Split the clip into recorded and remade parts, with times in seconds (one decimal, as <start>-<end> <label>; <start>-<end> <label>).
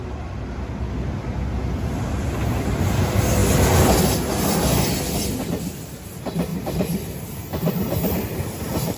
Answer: 0.0-6.5 recorded; 6.5-8.2 remade; 8.2-9.0 recorded